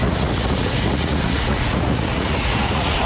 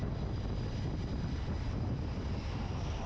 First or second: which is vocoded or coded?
first